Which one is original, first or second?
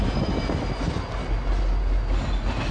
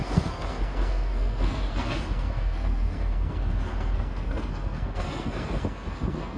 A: first